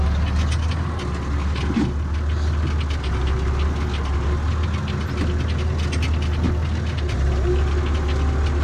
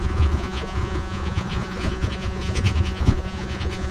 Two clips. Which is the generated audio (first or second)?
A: second